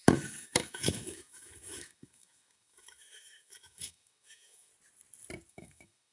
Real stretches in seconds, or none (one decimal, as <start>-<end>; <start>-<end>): 4.7-5.5